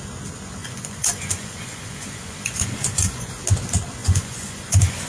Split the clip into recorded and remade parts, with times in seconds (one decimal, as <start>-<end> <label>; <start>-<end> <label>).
0.0-0.6 recorded; 0.6-3.4 remade; 3.4-4.0 recorded; 4.0-5.1 remade